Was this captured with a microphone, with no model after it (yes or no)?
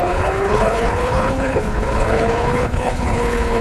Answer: no